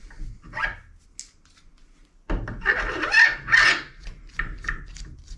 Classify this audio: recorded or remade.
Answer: recorded